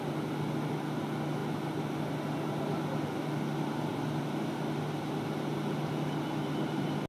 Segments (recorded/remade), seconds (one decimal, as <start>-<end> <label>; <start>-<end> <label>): 0.0-7.1 recorded